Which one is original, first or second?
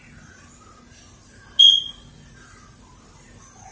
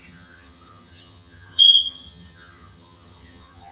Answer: first